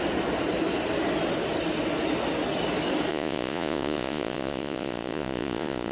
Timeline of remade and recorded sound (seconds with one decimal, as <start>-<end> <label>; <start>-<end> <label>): 0.0-3.1 recorded; 3.1-5.9 remade